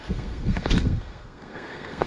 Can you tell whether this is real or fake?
fake